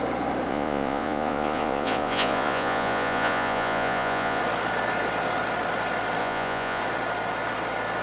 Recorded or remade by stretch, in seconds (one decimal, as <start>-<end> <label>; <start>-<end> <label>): 0.0-0.5 recorded; 0.5-4.4 remade; 4.4-6.2 recorded; 6.2-6.8 remade; 6.8-8.0 recorded